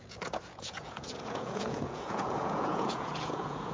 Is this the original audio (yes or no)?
no